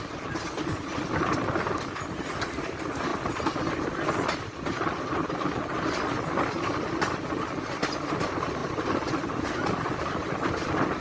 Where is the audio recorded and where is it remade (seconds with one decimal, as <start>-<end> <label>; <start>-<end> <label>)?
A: 0.0-11.0 recorded